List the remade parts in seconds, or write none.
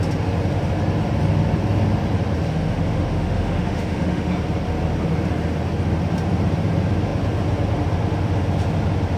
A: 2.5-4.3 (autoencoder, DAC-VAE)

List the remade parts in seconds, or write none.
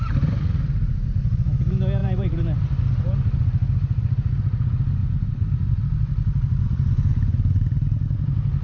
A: 2.0-2.6 (vocoder, BigVGAN v2); 5.0-5.8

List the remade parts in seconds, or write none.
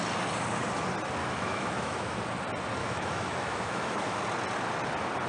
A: 1.2-2.2 (autoencoder, DAC-VAE); 2.8-4.2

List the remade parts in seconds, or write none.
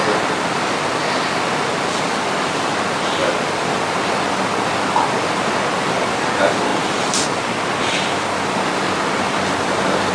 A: none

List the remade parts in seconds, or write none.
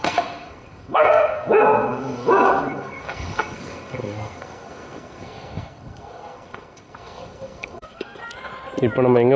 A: 0.0-8.2 (codec, SNAC)